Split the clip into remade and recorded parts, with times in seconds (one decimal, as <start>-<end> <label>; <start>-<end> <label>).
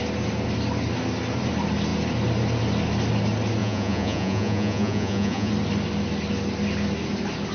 0.0-3.6 recorded; 3.6-5.5 remade; 5.5-7.5 recorded